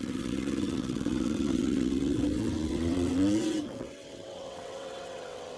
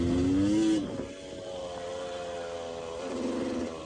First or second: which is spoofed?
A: first